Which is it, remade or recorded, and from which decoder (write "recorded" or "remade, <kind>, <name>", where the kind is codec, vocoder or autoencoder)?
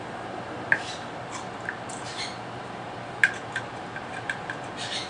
recorded